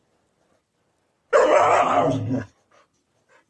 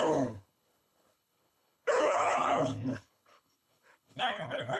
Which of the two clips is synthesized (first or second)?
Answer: second